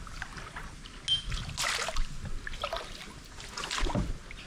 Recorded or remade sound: recorded